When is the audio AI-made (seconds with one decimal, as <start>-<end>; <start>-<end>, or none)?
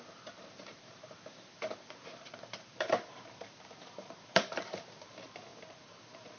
0.0-6.4